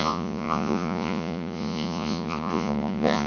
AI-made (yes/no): yes